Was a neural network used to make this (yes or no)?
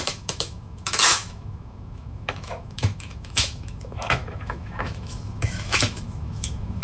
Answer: yes